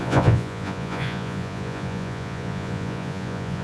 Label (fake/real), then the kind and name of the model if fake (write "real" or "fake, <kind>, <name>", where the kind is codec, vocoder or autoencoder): fake, vocoder, Vocos